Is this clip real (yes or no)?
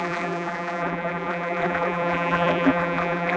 no